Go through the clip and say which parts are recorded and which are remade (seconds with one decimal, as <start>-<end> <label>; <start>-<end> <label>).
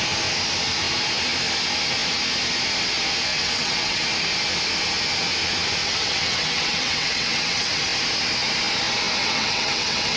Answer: 0.0-3.3 recorded; 3.3-4.0 remade; 4.0-5.8 recorded; 5.8-7.8 remade; 7.8-9.2 recorded; 9.2-10.2 remade